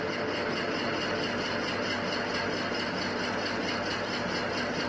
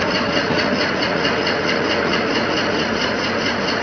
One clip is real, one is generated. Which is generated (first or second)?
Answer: second